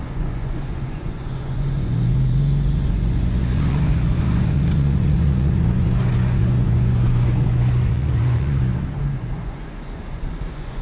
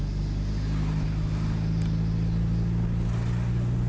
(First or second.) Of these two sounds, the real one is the second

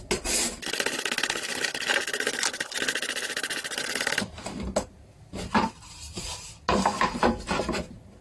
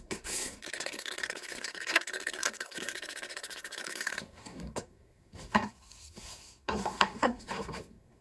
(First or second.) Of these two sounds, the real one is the first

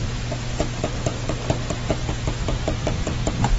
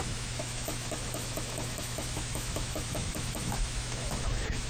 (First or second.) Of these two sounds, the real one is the first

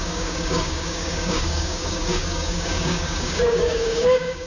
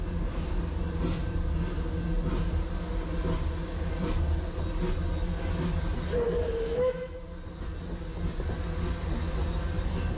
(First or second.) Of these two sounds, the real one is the second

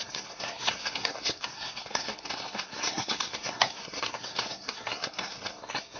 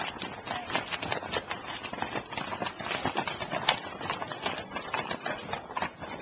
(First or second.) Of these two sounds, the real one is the second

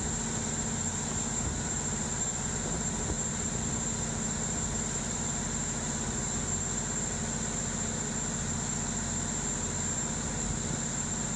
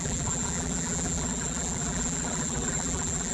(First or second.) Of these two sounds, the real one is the first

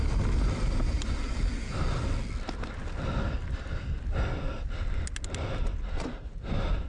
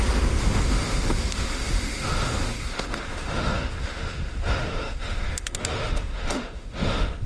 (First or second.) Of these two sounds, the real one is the first